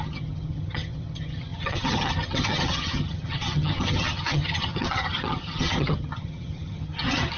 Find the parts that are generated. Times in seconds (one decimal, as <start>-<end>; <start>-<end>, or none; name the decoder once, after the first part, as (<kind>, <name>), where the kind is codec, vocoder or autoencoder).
0.0-7.4 (vocoder, HiFi-GAN)